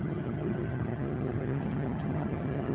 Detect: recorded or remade remade